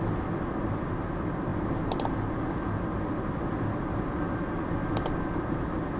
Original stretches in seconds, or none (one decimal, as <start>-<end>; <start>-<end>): 0.0-6.0